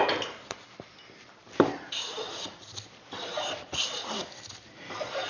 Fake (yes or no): no